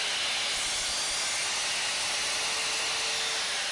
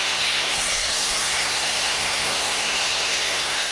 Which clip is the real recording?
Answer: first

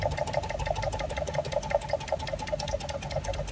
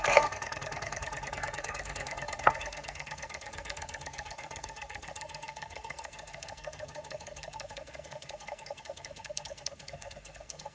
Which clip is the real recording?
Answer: first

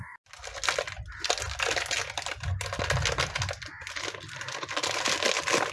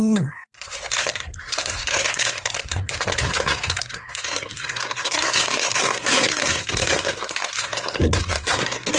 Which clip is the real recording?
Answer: first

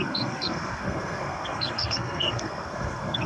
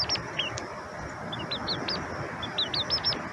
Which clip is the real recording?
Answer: second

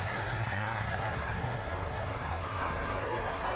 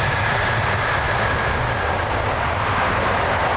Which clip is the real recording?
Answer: second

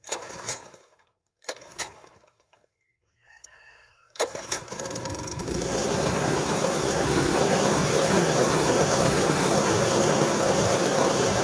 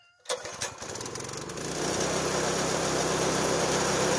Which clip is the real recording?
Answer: second